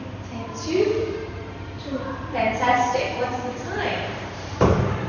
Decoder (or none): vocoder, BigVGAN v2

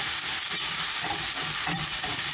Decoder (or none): none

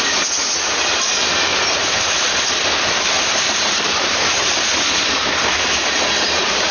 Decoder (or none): vocoder, BigVGAN v2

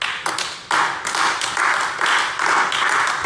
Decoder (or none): none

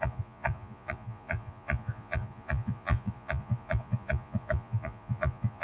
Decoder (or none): vocoder, Vocos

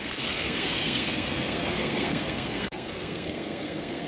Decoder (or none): codec, SNAC